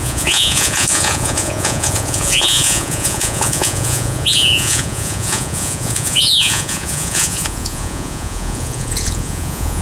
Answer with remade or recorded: remade